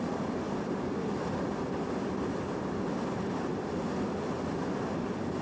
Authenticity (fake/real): real